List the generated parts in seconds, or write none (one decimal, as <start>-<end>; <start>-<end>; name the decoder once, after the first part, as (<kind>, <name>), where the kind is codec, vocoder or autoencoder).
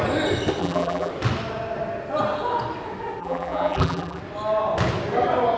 0.6-1.1 (vocoder, BigVGAN v2); 3.2-4.2